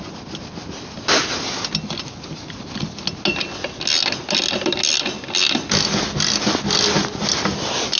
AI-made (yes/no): no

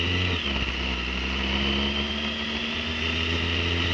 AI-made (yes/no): no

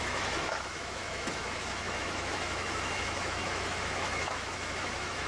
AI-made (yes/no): yes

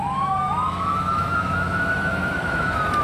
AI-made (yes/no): yes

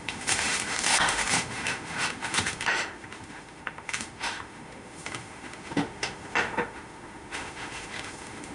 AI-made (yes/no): yes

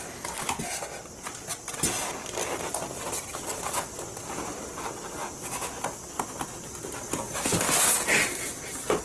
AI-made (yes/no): no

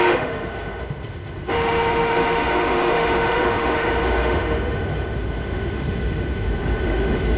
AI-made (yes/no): yes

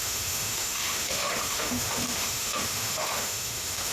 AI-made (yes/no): yes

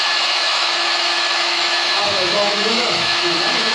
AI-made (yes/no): yes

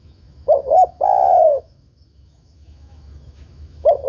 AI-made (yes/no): yes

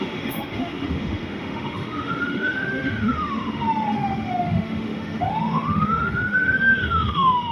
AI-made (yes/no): yes